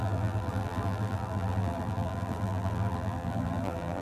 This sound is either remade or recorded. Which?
remade